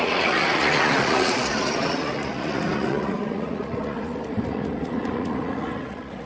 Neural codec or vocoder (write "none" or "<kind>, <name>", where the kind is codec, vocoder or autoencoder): vocoder, Vocos